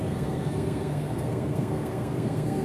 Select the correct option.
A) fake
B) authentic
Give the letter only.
A